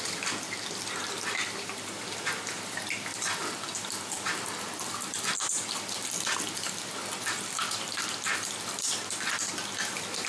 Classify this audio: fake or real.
fake